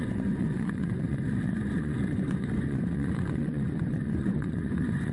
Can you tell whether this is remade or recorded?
remade